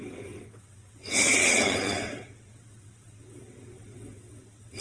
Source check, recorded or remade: remade